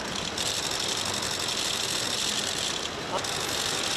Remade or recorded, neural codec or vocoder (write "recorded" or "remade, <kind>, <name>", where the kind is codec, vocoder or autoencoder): recorded